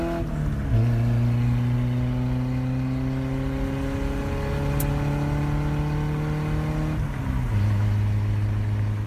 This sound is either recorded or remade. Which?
recorded